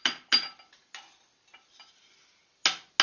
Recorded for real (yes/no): yes